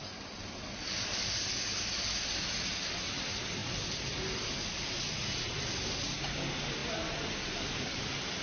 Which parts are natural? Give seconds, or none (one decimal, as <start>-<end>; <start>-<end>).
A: 0.0-8.4